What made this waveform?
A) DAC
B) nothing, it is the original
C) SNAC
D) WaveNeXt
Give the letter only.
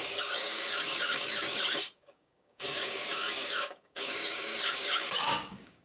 A